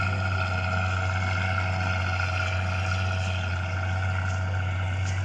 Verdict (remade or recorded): recorded